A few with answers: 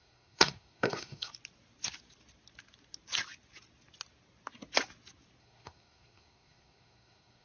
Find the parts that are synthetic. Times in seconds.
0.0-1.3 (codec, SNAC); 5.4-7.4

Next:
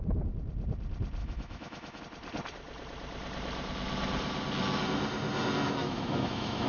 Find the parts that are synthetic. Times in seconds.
1.2-2.0 (autoencoder, DAC-VAE); 5.8-6.7

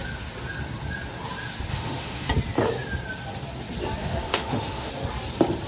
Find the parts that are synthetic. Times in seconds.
1.7-2.3 (autoencoder, DAC-VAE); 4.0-4.9

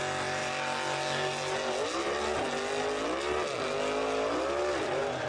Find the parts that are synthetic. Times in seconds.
none